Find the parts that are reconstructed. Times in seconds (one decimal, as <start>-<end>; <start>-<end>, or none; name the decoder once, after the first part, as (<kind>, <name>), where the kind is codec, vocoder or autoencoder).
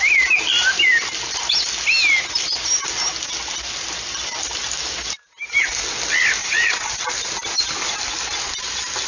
6.4-6.9 (vocoder, WaveNeXt)